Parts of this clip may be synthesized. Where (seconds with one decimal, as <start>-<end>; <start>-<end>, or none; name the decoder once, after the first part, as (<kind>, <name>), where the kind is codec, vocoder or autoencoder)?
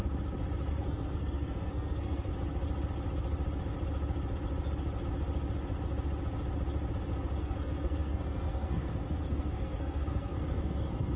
0.7-2.3 (codec, SNAC); 7.4-11.2